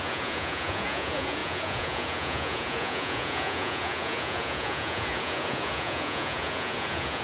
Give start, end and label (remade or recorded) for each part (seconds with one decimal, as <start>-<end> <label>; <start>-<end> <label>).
0.0-7.2 remade